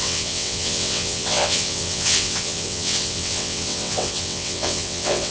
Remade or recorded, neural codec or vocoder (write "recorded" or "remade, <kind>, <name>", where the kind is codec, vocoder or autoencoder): remade, vocoder, WaveNeXt